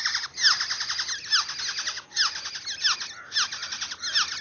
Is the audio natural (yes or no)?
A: yes